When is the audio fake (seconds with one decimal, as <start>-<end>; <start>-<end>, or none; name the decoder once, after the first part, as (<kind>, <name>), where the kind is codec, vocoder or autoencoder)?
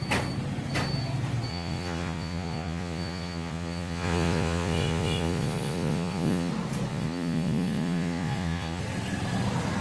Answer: 1.5-6.5 (vocoder, Vocos); 6.9-8.8